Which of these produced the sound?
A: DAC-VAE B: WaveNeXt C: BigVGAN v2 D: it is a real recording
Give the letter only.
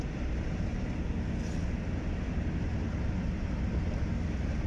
D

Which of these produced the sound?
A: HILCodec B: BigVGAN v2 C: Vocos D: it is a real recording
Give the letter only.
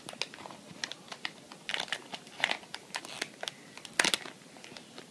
D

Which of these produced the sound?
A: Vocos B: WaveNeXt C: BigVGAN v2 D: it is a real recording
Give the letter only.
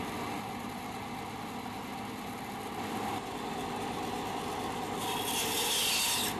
D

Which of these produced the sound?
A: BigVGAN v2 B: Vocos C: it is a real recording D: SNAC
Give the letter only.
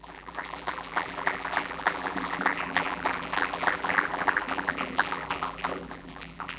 A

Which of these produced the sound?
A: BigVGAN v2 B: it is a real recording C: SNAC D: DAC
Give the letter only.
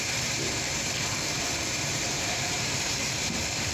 A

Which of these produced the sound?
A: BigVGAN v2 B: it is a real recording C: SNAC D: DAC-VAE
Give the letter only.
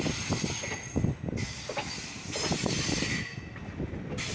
B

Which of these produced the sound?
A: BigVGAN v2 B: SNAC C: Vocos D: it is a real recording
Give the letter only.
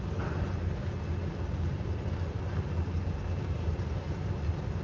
A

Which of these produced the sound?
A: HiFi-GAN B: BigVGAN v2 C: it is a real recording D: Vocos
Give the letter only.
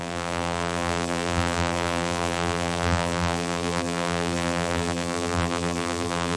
B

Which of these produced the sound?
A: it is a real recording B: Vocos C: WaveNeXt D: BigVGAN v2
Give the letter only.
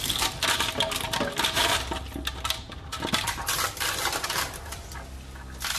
A